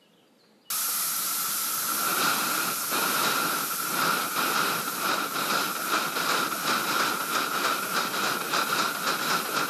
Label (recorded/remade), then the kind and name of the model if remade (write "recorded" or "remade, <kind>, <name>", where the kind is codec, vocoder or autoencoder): recorded